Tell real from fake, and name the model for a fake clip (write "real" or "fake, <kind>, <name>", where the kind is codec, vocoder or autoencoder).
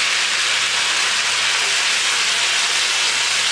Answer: real